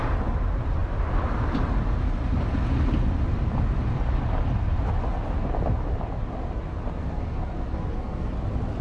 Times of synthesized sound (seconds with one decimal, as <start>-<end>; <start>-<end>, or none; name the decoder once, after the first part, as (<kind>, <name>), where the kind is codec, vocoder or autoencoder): 7.0-8.3 (codec, SNAC)